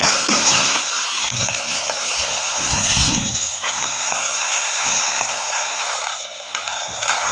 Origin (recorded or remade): remade